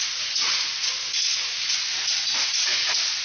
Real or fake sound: fake